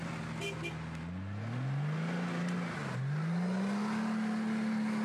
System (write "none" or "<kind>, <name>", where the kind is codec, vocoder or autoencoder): none